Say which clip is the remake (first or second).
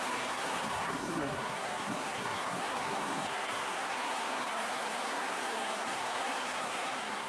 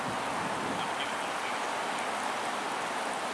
first